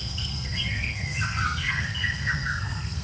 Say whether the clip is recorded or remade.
remade